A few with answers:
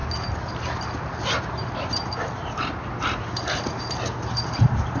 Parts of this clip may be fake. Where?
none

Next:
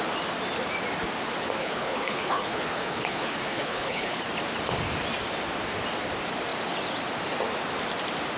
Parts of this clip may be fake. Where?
1.6-4.2